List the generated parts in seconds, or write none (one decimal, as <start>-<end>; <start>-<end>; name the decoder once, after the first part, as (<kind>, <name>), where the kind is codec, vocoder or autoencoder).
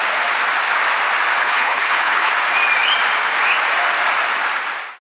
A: 1.4-2.3 (codec, HILCodec)